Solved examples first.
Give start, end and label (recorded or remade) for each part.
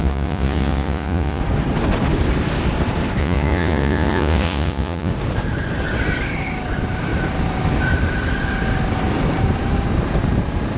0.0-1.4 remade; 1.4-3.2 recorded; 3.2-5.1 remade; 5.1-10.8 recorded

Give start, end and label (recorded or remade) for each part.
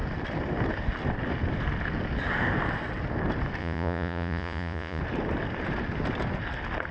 0.0-3.6 recorded; 3.6-5.0 remade; 5.0-6.9 recorded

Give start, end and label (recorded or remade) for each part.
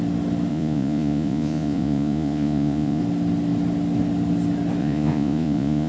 0.0-0.5 recorded; 0.5-3.0 remade; 3.0-4.8 recorded; 4.8-5.9 remade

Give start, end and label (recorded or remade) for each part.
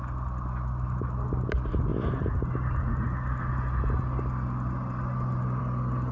0.0-6.1 recorded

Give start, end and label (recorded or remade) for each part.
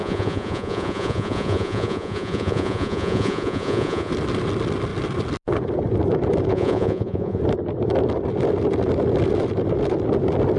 0.0-4.1 remade; 4.1-6.5 recorded; 6.5-7.4 remade; 7.4-10.6 recorded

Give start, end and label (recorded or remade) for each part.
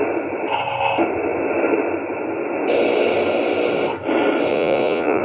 0.0-4.5 recorded; 4.5-5.2 remade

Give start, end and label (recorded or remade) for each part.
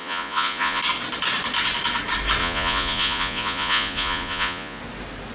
0.0-0.8 remade; 0.8-2.4 recorded; 2.4-4.8 remade; 4.8-5.3 recorded